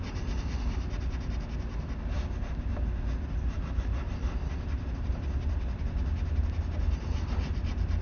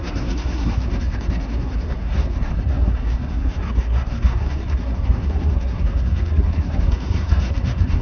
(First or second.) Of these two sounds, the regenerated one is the second